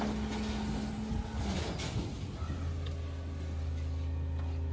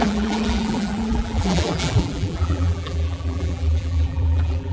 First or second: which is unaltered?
first